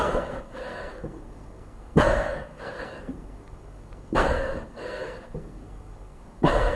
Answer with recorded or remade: remade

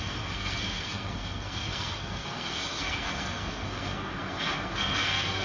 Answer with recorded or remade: remade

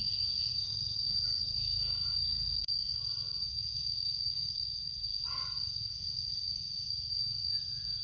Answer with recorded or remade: remade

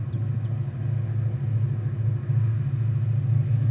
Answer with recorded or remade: recorded